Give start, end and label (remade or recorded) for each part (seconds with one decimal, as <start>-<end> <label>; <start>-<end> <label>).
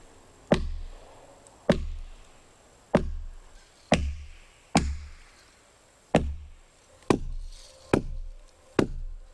0.0-9.3 recorded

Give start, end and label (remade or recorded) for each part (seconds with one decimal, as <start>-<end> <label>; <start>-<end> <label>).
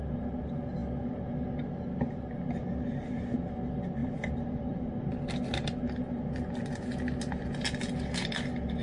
0.0-4.0 recorded; 4.0-5.1 remade; 5.1-8.8 recorded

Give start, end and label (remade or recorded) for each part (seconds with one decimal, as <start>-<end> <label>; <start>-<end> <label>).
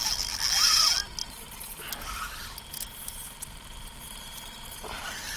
0.0-1.2 recorded; 1.2-1.8 remade; 1.8-5.4 recorded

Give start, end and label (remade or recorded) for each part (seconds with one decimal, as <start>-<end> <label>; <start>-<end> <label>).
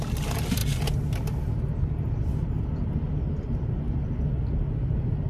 0.0-5.3 recorded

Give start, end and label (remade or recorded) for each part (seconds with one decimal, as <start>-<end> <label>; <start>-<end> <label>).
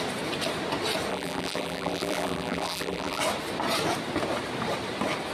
0.0-1.1 recorded; 1.1-3.2 remade; 3.2-5.3 recorded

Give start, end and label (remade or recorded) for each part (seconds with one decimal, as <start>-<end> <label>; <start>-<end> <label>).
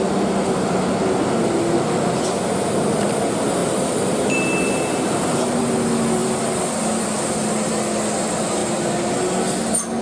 0.0-3.6 recorded; 3.6-5.4 remade; 5.4-6.2 recorded; 6.2-7.7 remade; 7.7-8.6 recorded; 8.6-9.1 remade; 9.1-10.0 recorded